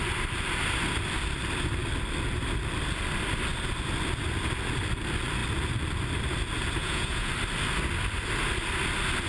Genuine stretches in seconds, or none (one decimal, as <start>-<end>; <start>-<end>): 0.0-6.8; 7.3-9.3